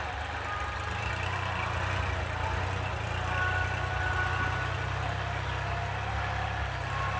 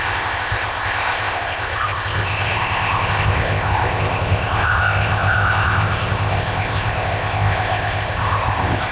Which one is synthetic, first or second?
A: second